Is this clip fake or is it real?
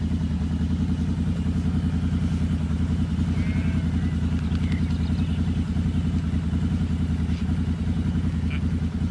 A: real